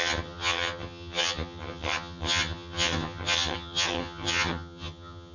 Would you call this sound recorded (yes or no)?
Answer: no